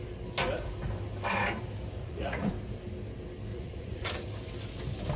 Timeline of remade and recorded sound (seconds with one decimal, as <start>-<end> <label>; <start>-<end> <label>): 0.0-2.0 recorded; 2.0-2.5 remade; 2.5-3.5 recorded; 3.5-4.1 remade; 4.1-5.2 recorded